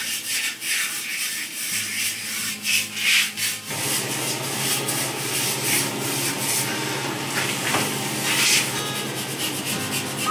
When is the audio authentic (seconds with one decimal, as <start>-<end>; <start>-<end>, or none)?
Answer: 0.0-1.2; 2.5-10.3